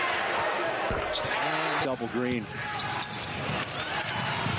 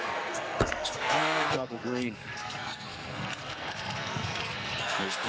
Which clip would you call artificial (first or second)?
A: second